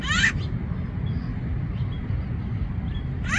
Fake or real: real